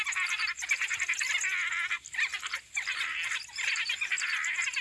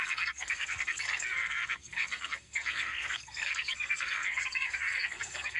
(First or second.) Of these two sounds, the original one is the first